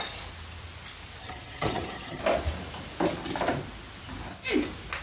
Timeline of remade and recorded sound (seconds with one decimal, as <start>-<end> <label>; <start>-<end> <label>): 0.0-1.2 recorded; 1.2-2.2 remade; 2.2-5.0 recorded